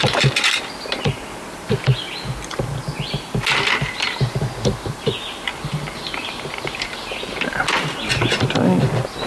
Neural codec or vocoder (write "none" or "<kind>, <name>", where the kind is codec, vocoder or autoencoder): none